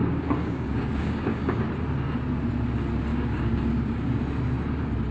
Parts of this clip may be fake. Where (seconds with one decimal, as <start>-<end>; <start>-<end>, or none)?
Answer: 0.0-1.6; 3.1-4.2